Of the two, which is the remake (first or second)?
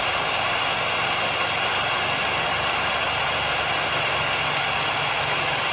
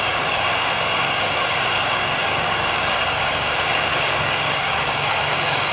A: second